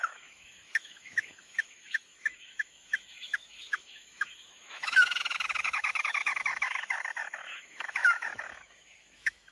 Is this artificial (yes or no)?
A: yes